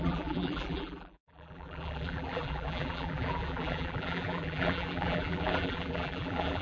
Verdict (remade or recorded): remade